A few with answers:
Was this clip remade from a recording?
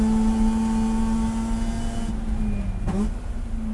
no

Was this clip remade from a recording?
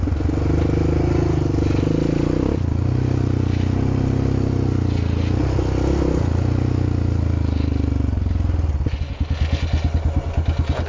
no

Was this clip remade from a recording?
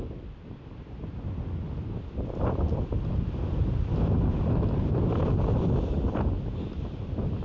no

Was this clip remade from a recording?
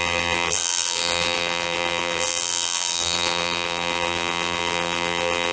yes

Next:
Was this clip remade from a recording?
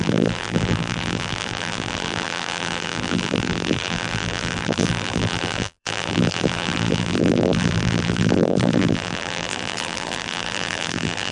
yes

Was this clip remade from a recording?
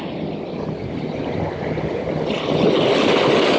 no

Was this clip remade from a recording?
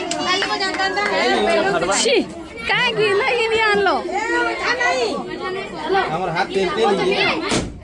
no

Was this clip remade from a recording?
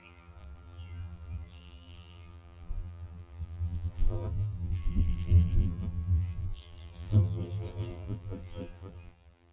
yes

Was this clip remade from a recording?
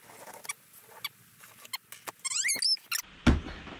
no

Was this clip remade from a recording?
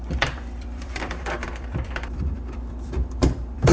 yes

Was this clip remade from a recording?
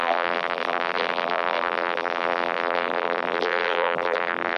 yes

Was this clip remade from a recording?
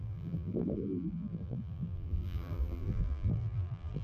yes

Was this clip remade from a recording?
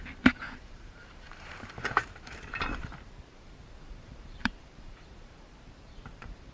yes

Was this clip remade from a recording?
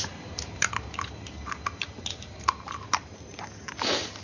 yes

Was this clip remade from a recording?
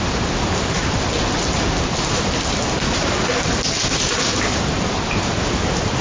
no